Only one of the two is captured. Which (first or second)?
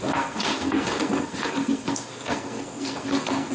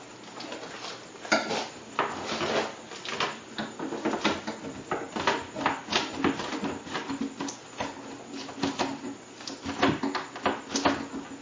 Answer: second